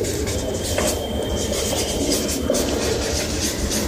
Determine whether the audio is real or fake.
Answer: fake